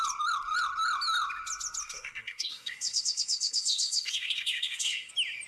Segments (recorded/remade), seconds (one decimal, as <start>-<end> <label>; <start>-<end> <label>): 0.0-1.8 recorded; 1.8-5.1 remade; 5.1-5.5 recorded